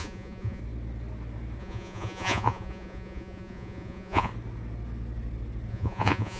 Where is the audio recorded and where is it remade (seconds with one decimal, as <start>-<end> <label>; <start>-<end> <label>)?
0.0-0.6 remade; 0.6-1.6 recorded; 1.6-4.3 remade; 4.3-5.7 recorded; 5.7-6.4 remade